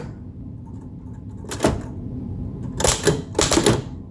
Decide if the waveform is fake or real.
real